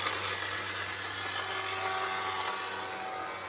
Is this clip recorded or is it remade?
recorded